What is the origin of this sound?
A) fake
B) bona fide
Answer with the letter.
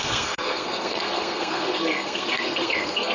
A